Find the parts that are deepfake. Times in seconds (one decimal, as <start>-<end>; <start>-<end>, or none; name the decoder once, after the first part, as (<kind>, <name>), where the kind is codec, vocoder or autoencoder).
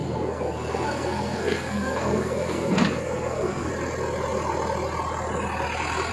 0.0-3.7 (codec, SNAC)